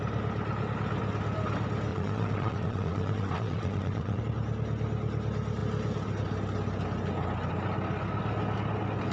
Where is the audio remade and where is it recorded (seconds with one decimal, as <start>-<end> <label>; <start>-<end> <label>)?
0.0-1.9 recorded; 1.9-4.2 remade; 4.2-9.1 recorded